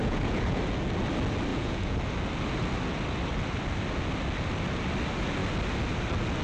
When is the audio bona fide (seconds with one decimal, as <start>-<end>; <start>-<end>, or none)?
0.6-1.5; 2.0-6.4